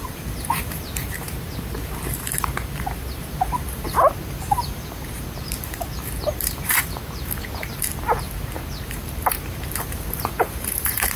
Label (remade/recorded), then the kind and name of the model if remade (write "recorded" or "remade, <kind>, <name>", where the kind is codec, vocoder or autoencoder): remade, vocoder, BigVGAN v2